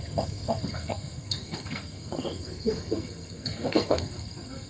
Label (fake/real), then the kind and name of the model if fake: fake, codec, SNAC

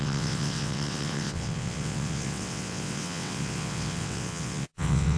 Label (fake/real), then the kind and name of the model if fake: fake, vocoder, WaveNeXt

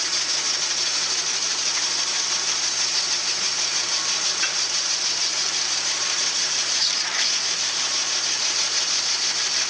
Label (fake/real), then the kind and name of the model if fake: fake, vocoder, BigVGAN v2